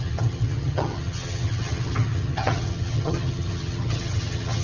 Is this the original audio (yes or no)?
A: no